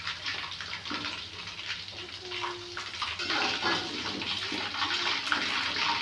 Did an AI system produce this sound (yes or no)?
no